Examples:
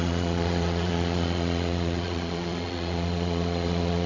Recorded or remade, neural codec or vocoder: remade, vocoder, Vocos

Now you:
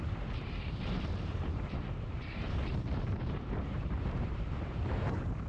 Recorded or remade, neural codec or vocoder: remade, vocoder, BigVGAN v2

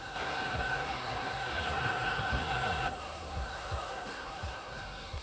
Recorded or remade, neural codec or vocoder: remade, codec, SNAC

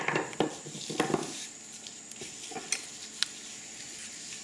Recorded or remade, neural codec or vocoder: recorded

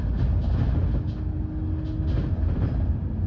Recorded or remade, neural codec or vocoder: recorded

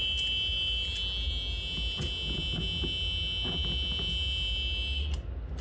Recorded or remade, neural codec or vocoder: recorded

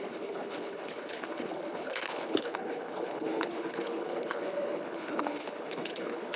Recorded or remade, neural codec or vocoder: remade, codec, HILCodec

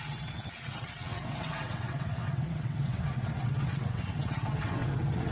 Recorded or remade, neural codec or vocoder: remade, vocoder, WaveNeXt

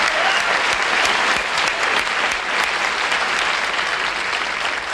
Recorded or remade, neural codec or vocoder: recorded